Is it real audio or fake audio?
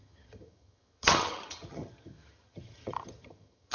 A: fake